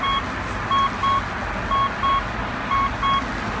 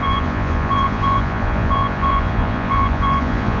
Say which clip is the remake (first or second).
second